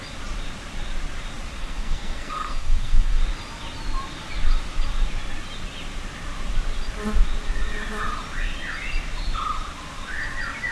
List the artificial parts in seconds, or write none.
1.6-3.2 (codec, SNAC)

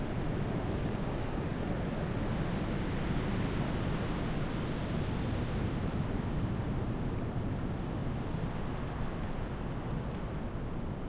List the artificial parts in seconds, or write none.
0.8-1.6 (codec, DAC)

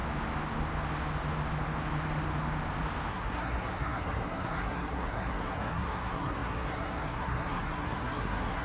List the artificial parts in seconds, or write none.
3.1-8.6 (codec, SNAC)